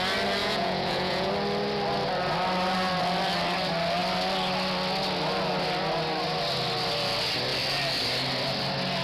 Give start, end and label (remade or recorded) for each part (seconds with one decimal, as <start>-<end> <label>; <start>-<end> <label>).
0.0-0.4 recorded; 0.4-1.3 remade; 1.3-9.0 recorded